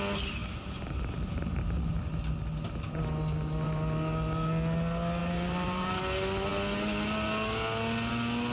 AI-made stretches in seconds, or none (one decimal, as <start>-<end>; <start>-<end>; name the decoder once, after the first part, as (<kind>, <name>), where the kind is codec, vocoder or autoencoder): 0.4-2.2 (vocoder, BigVGAN v2); 5.2-6.0